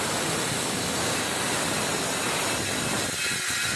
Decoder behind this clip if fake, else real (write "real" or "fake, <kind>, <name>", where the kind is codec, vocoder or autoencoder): real